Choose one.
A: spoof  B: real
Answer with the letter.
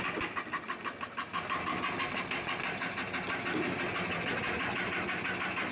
B